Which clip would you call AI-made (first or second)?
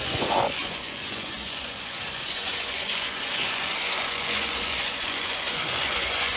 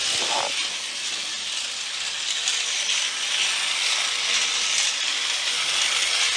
first